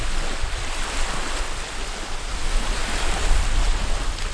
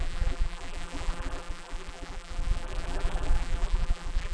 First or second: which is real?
first